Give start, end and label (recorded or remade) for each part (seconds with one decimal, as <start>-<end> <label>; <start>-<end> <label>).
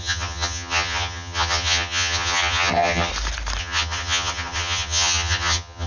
0.0-3.1 remade; 3.1-3.6 recorded; 3.6-5.9 remade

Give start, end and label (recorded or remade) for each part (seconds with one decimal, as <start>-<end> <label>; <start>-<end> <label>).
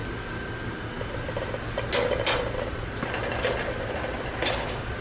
0.0-5.0 recorded